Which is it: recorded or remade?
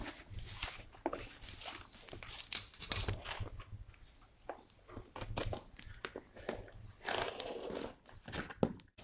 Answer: recorded